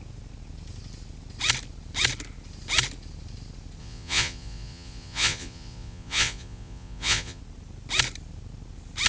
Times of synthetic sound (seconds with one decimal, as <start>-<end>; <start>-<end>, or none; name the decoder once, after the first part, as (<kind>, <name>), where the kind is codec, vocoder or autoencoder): 3.8-7.4 (vocoder, Vocos)